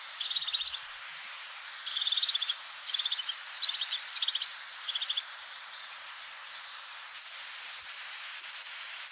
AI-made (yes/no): no